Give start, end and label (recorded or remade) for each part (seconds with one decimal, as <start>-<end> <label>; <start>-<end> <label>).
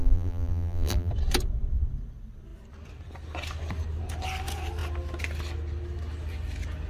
0.0-1.1 remade; 1.1-6.9 recorded